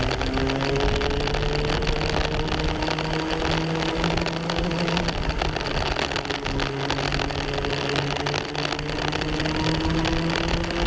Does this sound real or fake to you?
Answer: real